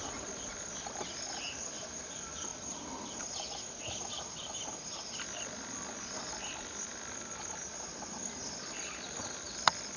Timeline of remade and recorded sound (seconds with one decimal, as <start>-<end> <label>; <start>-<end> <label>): 0.0-6.9 remade; 6.9-8.7 recorded; 8.7-10.0 remade